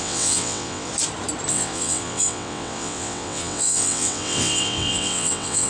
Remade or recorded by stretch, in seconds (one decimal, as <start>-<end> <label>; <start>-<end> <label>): 0.0-0.9 remade; 0.9-1.5 recorded; 1.5-5.7 remade